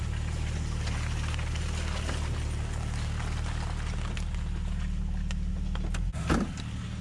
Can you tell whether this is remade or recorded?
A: recorded